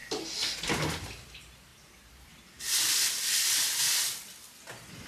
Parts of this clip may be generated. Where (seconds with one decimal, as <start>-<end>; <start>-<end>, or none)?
none